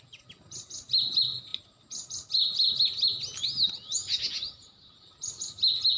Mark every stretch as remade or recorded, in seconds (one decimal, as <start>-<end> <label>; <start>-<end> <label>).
0.0-6.0 recorded